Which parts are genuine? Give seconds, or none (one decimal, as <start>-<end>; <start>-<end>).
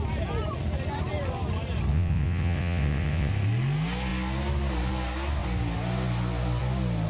0.0-1.9; 3.3-7.1